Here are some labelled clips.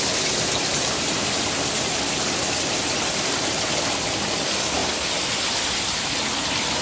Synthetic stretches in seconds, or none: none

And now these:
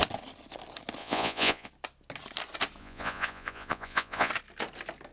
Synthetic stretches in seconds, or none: 1.0-1.7; 2.8-4.3

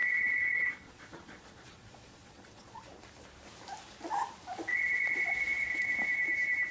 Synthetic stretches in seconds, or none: 0.0-2.8; 4.7-5.7